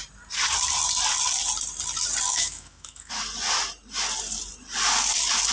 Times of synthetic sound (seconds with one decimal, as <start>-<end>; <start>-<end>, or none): 2.3-3.1